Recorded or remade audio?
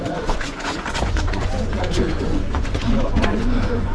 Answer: remade